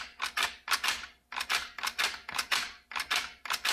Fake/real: real